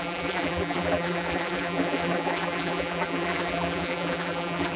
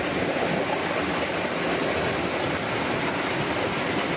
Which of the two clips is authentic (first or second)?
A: second